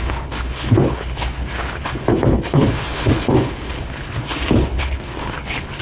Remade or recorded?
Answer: remade